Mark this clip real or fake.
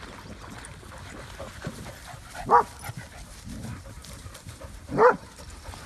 real